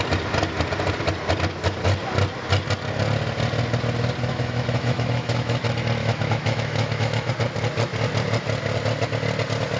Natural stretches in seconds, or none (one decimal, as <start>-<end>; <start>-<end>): 0.0-4.3; 5.6-6.0; 7.3-9.8